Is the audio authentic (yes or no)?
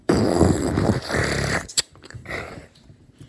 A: no